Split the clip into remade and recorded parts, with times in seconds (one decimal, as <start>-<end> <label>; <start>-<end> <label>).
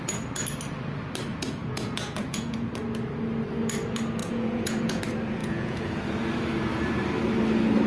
0.0-1.3 recorded; 1.3-2.7 remade; 2.7-4.2 recorded; 4.2-5.0 remade; 5.0-5.4 recorded; 5.4-6.0 remade; 6.0-7.9 recorded